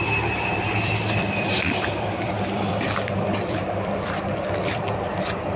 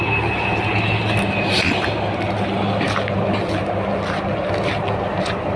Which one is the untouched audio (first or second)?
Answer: second